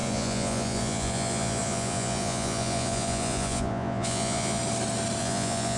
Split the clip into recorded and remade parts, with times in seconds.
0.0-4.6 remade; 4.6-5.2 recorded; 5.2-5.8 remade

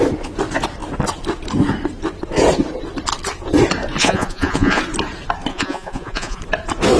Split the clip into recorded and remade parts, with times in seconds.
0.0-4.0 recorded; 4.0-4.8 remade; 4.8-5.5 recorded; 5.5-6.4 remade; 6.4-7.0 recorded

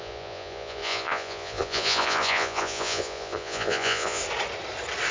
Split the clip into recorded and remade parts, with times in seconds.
0.0-4.2 remade; 4.2-5.1 recorded

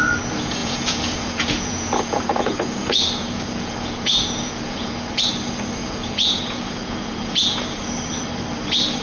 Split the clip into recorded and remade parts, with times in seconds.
0.0-0.6 recorded; 0.6-5.2 remade; 5.2-5.8 recorded; 5.8-7.9 remade; 7.9-9.0 recorded

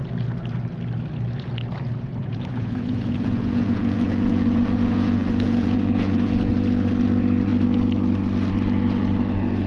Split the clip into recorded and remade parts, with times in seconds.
0.0-2.2 recorded; 2.2-6.5 remade; 6.5-9.7 recorded